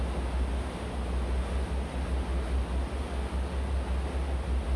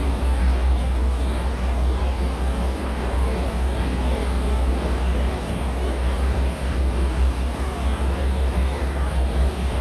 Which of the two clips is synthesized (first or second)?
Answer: second